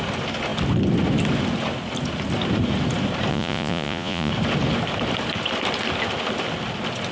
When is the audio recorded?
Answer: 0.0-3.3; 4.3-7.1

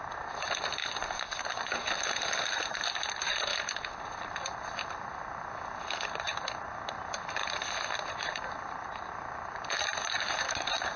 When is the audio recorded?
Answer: 0.0-0.8; 1.7-3.5; 6.7-7.4; 9.1-11.0

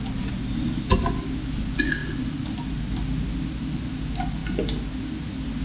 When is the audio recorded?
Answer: 0.0-5.6

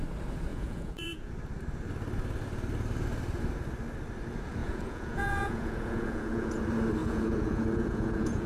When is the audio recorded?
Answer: 0.0-0.5; 1.3-4.6; 6.6-7.0

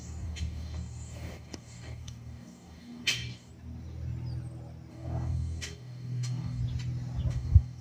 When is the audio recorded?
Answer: 3.5-4.9; 6.6-7.3

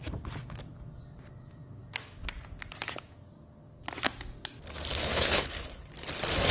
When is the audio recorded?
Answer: 0.0-4.9; 5.9-6.5

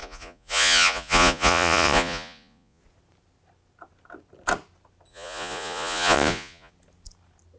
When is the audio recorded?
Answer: 2.8-5.1; 6.7-7.6